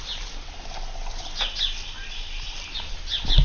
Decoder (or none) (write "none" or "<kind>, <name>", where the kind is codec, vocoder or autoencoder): none